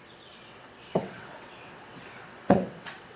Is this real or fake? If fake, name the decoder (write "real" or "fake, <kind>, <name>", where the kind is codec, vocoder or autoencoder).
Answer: fake, vocoder, WaveNeXt